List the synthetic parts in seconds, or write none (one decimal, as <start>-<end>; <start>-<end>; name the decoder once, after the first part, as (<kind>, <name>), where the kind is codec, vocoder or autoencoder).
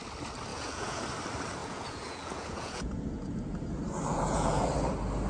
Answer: 0.5-1.0 (vocoder, Vocos); 1.6-3.0; 4.1-4.7